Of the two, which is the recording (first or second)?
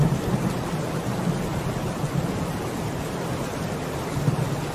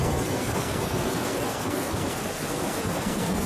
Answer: first